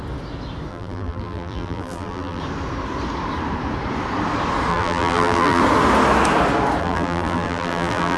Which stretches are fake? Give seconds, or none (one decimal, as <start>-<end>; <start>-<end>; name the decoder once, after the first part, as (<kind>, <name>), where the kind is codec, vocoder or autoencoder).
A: 0.7-2.4 (vocoder, BigVGAN v2); 4.7-5.6; 6.8-8.2